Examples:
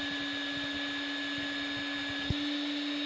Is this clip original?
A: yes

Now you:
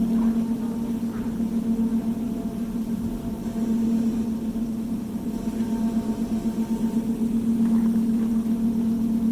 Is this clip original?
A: yes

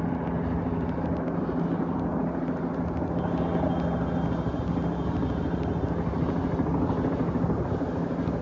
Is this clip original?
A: yes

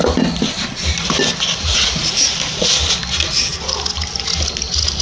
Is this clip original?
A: yes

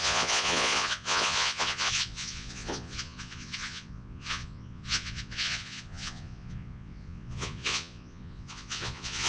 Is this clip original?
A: no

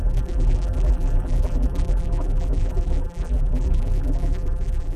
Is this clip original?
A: no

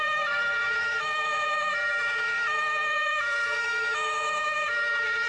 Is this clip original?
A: no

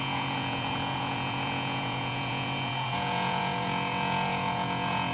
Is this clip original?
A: no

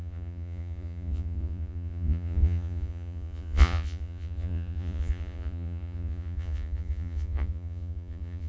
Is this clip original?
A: no